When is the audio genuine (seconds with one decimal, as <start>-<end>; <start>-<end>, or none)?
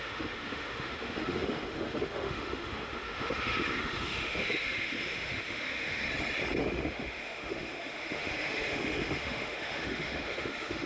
6.0-6.6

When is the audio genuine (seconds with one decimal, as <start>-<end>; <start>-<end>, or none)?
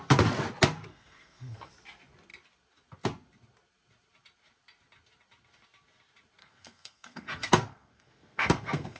0.0-0.9; 1.7-6.4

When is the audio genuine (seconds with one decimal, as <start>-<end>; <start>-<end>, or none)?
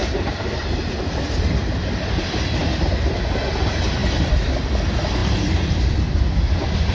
1.2-4.0; 4.8-5.2; 6.2-6.9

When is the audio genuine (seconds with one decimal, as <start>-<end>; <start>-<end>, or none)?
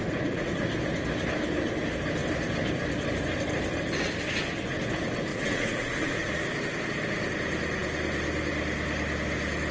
0.7-5.3; 6.3-9.7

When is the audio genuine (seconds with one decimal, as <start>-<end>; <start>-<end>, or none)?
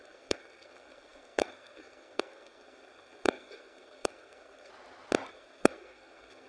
4.7-5.3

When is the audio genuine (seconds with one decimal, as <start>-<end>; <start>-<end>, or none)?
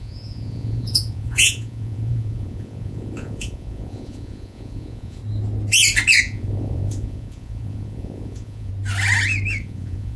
5.2-6.2; 8.7-9.6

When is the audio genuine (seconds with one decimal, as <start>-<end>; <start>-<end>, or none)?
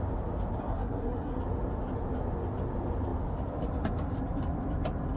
0.0-0.6; 1.4-5.2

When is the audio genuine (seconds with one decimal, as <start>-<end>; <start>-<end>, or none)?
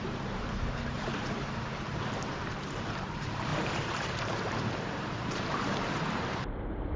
none